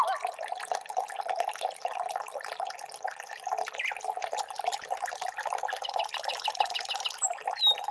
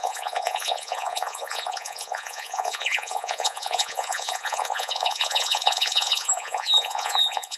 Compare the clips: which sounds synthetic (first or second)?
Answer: second